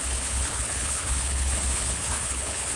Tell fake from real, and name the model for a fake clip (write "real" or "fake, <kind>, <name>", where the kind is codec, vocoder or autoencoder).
fake, codec, HILCodec